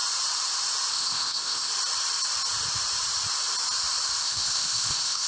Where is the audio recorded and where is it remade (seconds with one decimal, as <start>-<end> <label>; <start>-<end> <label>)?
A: 0.0-0.9 recorded; 0.9-1.7 remade; 1.7-4.2 recorded; 4.2-5.3 remade